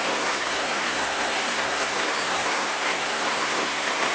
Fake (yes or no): yes